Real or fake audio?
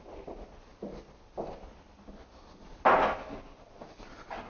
real